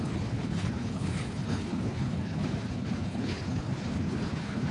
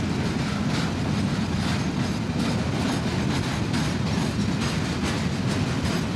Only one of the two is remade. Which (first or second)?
first